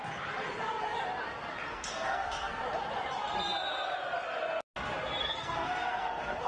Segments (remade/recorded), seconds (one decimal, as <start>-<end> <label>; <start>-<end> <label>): 0.0-1.7 recorded; 1.7-2.6 remade; 2.6-5.2 recorded; 5.2-6.5 remade

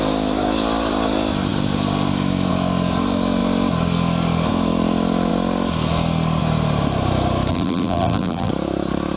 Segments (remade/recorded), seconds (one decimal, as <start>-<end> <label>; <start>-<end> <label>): 0.0-7.5 recorded; 7.5-8.5 remade; 8.5-9.2 recorded

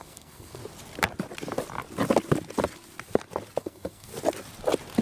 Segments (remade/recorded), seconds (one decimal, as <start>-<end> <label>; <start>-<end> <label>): 0.0-0.6 remade; 0.6-3.6 recorded; 3.6-4.1 remade; 4.1-5.0 recorded